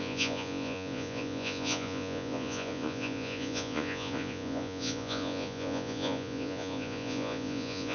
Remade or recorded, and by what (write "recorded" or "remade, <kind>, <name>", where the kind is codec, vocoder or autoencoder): remade, vocoder, Vocos